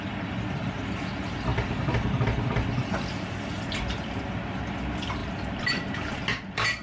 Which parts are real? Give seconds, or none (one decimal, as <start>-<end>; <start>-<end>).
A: 0.0-6.8

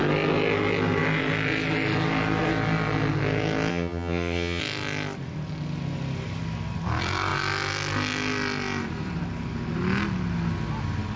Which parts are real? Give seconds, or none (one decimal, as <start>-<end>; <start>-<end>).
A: 0.0-3.7; 4.6-11.2

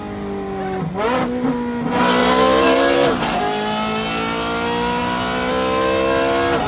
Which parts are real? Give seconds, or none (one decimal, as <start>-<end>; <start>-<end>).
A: 0.0-2.2; 3.4-6.7

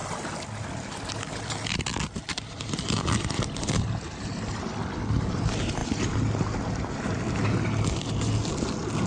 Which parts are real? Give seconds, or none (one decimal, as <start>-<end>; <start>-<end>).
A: 0.0-9.1

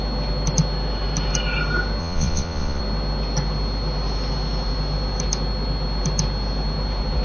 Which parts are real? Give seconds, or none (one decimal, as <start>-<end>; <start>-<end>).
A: 0.0-2.0; 2.8-7.2